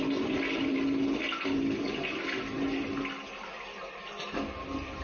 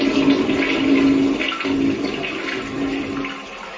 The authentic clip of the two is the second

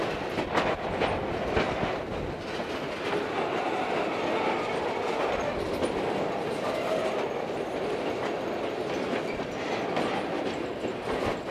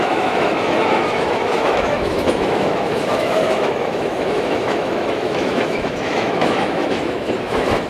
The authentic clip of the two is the first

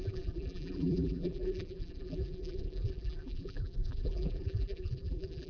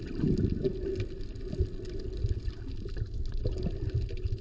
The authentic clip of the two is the second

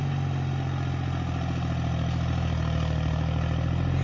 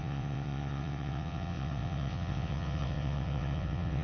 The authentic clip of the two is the first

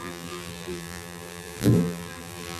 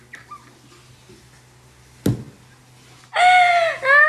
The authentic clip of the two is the second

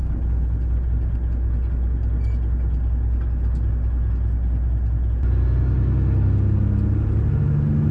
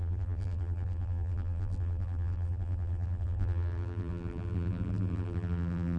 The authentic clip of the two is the first